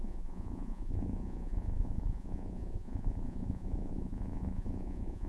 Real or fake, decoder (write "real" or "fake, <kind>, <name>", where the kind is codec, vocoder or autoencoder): fake, vocoder, Vocos